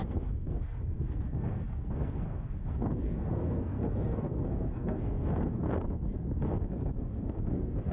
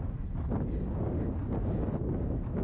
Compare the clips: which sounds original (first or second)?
second